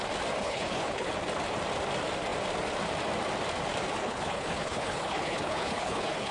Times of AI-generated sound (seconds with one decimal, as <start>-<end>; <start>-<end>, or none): 0.4-1.1; 4.0-6.3